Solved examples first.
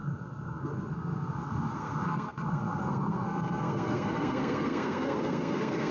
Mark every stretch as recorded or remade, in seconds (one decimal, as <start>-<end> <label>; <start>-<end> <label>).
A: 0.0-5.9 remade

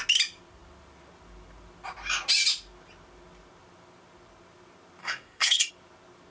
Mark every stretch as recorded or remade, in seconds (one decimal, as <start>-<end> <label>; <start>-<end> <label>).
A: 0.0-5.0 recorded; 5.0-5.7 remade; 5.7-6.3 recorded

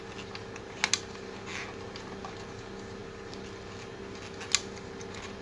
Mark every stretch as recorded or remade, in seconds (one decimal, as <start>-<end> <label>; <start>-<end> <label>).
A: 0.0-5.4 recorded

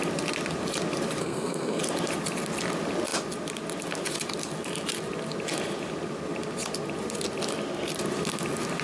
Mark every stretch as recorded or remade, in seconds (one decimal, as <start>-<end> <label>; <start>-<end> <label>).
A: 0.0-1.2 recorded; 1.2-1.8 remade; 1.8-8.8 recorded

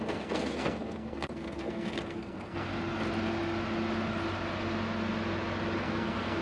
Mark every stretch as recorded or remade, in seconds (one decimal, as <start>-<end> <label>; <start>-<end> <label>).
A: 0.0-2.7 remade; 2.7-5.8 recorded; 5.8-6.4 remade

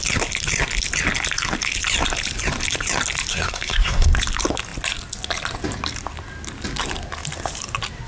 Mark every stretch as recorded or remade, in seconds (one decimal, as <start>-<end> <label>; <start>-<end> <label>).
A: 0.0-3.3 recorded; 3.3-4.1 remade; 4.1-8.1 recorded